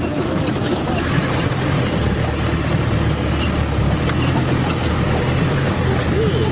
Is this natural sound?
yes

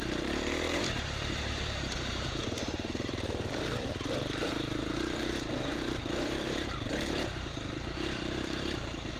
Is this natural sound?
no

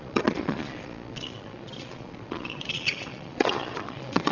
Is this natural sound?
no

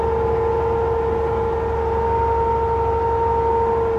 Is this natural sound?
yes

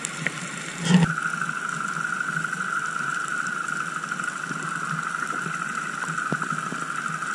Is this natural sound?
yes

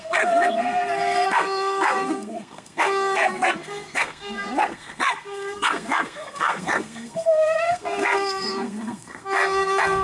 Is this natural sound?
no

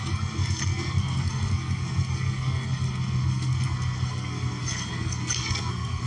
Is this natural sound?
no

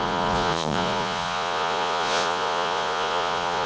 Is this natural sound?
no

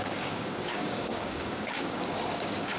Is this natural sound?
no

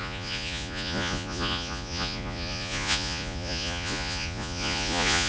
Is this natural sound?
no